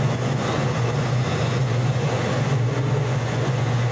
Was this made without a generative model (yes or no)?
no